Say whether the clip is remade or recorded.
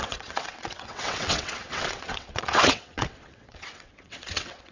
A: remade